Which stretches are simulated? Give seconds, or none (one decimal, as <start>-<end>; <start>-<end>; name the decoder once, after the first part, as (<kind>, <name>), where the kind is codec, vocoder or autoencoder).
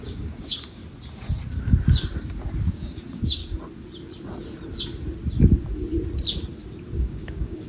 0.0-0.8 (codec, DAC); 2.7-3.4; 7.0-7.7